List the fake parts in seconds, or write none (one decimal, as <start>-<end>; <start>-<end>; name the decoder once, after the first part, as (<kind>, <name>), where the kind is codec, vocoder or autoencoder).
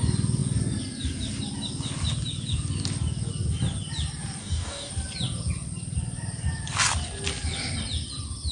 4.4-4.9 (codec, DAC)